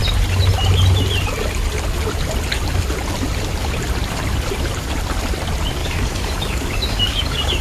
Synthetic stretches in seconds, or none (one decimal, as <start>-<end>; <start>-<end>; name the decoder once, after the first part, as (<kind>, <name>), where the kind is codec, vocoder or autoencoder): 5.8-7.6 (codec, DAC)